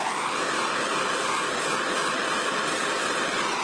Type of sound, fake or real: real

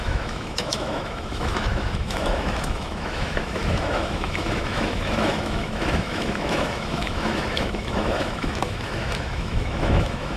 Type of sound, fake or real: fake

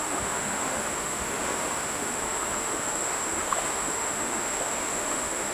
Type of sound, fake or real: fake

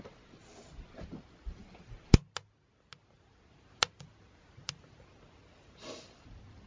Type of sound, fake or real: real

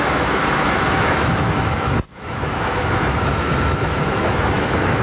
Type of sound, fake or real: fake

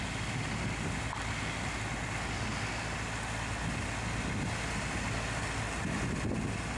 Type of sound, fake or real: real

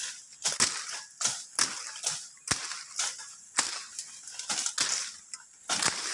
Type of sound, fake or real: real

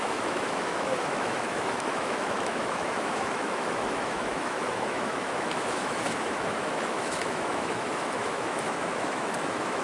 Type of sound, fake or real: fake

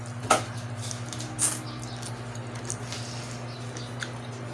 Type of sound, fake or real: real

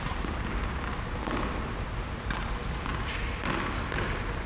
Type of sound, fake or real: real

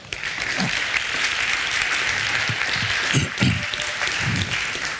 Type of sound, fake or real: real